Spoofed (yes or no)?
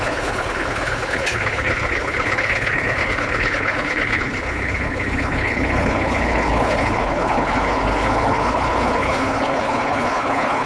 yes